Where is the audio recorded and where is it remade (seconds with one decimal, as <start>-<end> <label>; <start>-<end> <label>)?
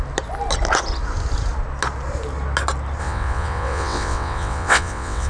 0.0-3.0 recorded; 3.0-5.3 remade